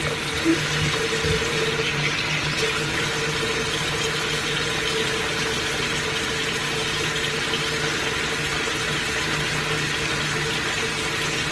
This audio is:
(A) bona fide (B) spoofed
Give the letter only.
A